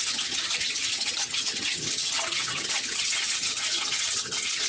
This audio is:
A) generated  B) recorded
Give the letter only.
A